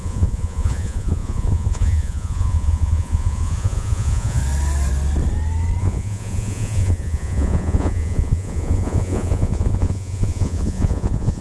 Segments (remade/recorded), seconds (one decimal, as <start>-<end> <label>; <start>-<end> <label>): 0.0-4.4 remade; 4.4-5.8 recorded; 5.8-11.4 remade